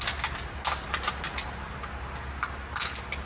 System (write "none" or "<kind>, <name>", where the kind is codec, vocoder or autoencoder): none